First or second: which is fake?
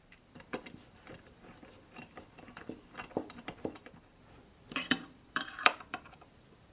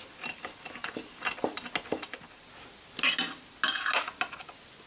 first